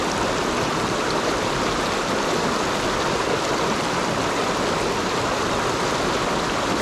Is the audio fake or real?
real